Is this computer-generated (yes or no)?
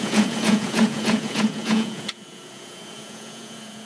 yes